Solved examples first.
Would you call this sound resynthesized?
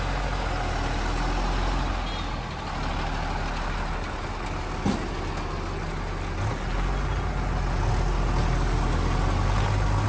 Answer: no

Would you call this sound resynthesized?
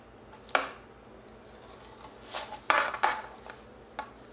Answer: no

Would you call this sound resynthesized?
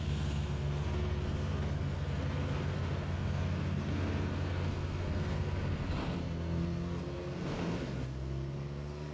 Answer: yes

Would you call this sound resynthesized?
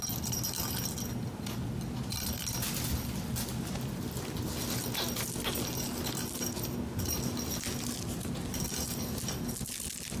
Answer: no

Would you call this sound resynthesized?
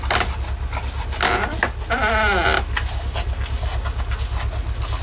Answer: no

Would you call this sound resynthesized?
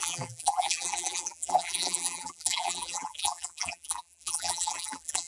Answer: yes